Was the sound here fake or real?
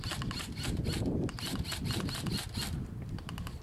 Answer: real